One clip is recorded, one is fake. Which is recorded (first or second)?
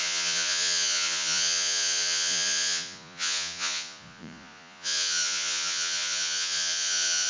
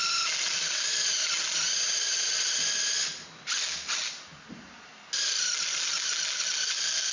second